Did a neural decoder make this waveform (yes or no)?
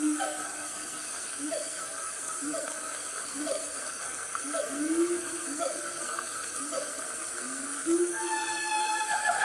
yes